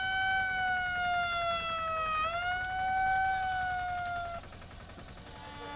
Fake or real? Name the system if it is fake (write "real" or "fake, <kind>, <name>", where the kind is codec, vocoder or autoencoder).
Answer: real